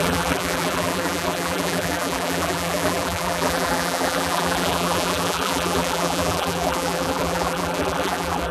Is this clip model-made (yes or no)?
yes